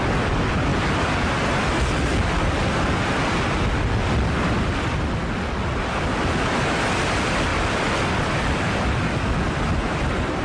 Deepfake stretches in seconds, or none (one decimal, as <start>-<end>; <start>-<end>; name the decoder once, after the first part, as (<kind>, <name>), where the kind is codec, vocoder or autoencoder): none